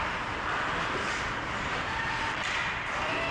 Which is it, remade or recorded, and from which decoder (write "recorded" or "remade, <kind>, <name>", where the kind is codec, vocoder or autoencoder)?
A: recorded